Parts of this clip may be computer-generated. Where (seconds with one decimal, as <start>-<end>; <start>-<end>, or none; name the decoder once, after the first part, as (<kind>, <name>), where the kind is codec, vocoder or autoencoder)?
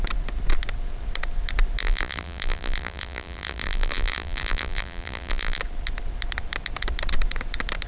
1.8-5.6 (vocoder, BigVGAN v2)